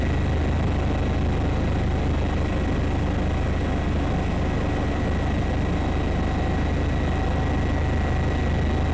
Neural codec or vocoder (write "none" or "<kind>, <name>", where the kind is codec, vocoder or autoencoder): none